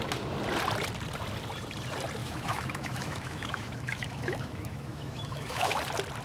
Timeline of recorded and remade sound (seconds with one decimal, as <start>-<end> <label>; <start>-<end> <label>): 0.0-2.2 recorded; 2.2-5.8 remade; 5.8-6.2 recorded